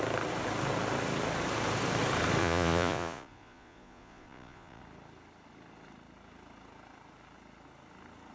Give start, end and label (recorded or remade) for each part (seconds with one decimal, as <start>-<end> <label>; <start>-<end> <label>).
0.0-2.4 recorded; 2.4-4.8 remade; 4.8-8.3 recorded

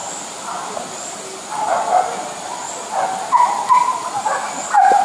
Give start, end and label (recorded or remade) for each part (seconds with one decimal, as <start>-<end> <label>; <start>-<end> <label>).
0.0-5.0 recorded

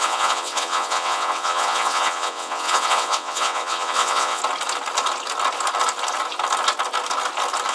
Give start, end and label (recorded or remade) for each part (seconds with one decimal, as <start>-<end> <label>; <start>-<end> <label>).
0.0-4.4 remade; 4.4-7.7 recorded

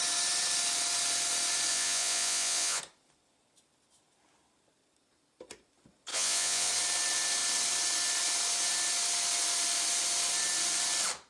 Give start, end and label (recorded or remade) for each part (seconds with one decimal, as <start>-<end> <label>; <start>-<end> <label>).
0.0-1.7 recorded; 1.7-2.8 remade; 2.8-6.1 recorded; 6.1-6.7 remade; 6.7-11.3 recorded

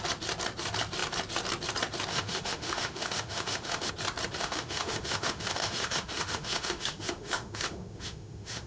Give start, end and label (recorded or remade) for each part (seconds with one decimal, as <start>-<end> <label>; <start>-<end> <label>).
0.0-2.1 recorded; 2.1-3.9 remade; 3.9-4.4 recorded; 4.4-8.7 remade